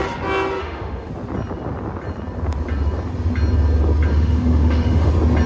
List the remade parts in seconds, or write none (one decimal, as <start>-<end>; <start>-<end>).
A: 0.6-1.1; 4.1-5.1